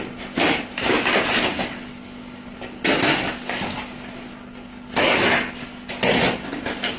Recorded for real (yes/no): yes